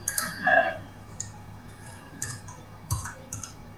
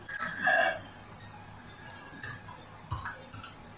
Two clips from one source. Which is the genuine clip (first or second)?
second